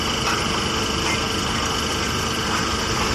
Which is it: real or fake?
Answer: real